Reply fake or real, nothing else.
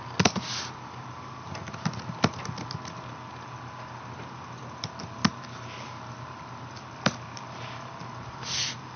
real